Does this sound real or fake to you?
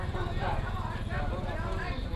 real